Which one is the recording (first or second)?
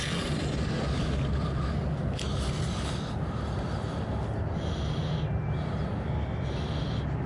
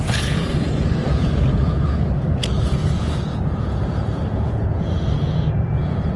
first